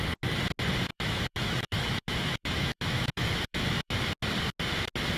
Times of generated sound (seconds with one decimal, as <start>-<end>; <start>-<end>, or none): 0.9-4.0